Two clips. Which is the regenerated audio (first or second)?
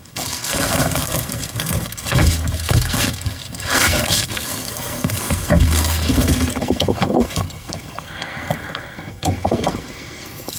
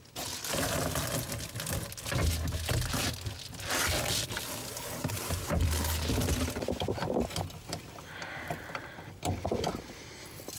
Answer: first